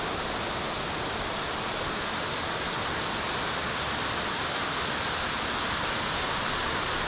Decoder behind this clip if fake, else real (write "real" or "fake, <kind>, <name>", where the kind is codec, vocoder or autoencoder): real